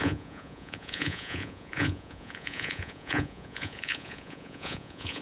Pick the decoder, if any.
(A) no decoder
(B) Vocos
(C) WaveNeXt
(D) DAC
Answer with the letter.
B